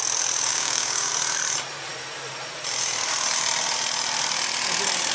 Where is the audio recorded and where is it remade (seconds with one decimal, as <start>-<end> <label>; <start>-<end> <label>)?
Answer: 0.0-0.5 recorded; 0.5-1.1 remade; 1.1-5.1 recorded